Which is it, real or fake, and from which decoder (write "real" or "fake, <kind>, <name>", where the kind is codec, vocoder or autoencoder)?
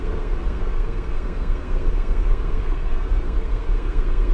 fake, codec, SNAC